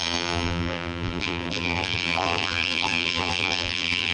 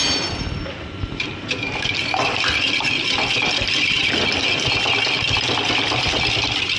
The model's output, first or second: first